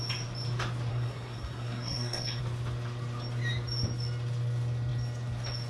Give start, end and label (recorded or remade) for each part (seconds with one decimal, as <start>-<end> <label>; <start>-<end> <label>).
0.0-0.9 recorded; 0.9-2.4 remade; 2.4-5.7 recorded